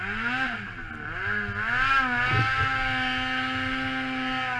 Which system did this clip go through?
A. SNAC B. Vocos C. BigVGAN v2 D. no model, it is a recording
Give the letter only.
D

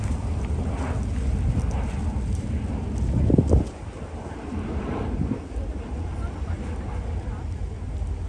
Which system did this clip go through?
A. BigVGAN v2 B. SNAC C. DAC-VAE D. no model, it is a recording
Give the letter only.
D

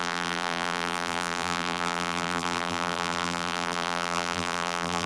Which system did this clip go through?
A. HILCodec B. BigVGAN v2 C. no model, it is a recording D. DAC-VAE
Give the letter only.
B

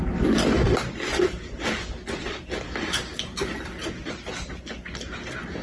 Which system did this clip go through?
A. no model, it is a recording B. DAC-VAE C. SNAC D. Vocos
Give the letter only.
A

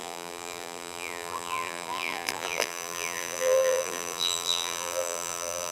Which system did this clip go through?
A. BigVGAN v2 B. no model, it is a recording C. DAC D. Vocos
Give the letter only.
A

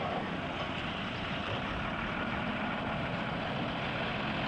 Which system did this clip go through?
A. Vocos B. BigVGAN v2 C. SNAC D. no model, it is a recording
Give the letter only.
D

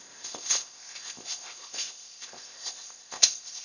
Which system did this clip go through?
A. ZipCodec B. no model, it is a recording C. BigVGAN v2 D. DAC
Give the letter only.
A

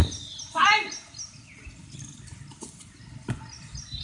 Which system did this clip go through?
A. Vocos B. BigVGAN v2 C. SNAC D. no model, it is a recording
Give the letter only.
D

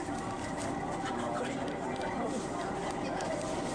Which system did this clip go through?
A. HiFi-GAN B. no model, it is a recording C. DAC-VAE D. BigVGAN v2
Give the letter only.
B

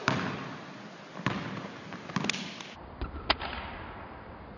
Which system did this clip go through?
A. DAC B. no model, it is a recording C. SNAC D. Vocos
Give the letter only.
B